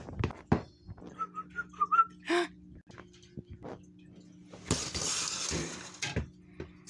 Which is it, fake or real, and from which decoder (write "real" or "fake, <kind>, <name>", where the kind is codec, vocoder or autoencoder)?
real